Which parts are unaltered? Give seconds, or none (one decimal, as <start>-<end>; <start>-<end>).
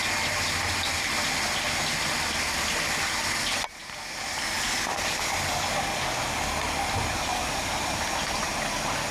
0.0-9.1